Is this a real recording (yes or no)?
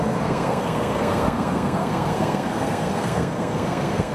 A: no